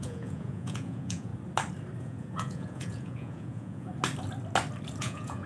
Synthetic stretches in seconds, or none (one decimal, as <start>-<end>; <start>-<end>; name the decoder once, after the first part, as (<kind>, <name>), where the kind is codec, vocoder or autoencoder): 0.0-1.3 (vocoder, Vocos); 2.0-3.9; 5.0-5.5